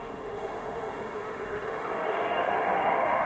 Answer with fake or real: fake